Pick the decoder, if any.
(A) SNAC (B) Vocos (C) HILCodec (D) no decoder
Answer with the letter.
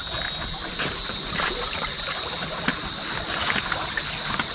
D